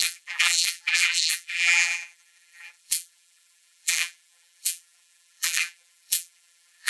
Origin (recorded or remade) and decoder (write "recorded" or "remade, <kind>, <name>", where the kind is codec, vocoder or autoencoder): remade, vocoder, BigVGAN v2